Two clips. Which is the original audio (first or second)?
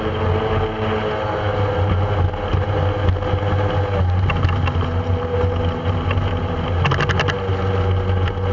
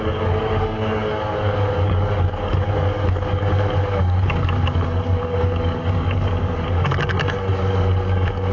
first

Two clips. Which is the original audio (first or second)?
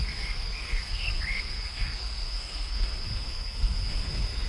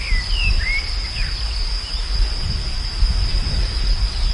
second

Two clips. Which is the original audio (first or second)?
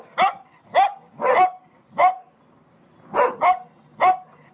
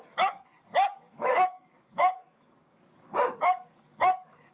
first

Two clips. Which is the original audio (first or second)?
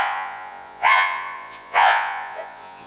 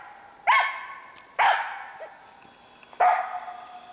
second